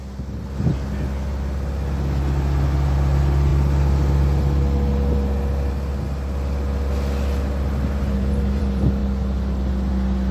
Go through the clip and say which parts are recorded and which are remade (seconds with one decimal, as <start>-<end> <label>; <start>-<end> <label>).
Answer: 0.0-10.3 recorded